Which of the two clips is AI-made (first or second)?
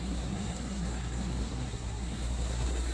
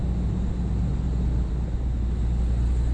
first